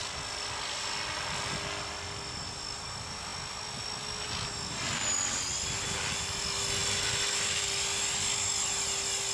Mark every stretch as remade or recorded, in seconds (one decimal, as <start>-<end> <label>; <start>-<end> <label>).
0.0-9.3 recorded